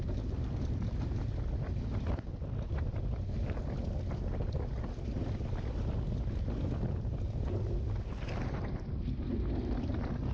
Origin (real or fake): real